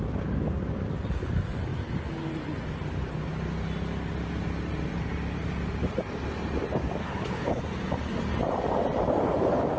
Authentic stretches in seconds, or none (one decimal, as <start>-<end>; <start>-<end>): 0.0-7.0; 7.6-9.8